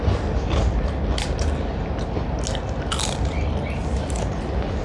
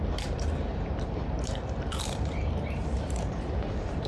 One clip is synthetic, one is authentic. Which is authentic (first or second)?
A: first